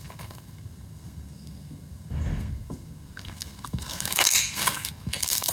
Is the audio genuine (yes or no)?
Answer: no